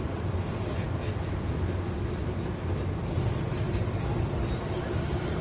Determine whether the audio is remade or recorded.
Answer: recorded